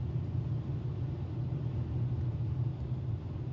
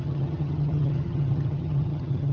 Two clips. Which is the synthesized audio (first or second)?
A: second